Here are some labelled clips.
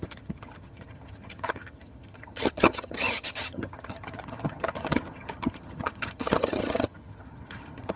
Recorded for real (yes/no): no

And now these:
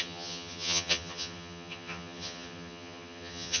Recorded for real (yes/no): no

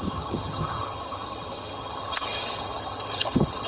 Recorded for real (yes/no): no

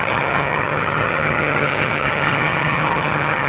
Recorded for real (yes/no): no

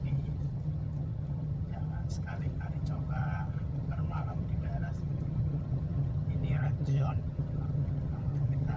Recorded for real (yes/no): no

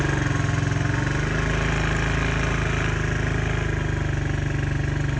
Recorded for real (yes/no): yes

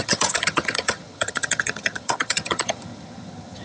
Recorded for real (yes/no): no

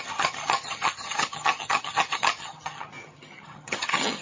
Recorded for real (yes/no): no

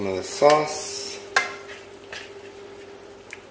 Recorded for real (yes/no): yes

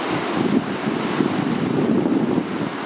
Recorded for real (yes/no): yes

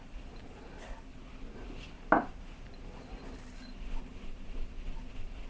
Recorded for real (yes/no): yes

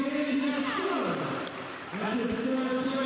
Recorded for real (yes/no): yes